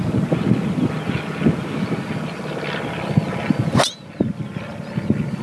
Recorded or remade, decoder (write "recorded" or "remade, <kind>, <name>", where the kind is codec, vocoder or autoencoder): recorded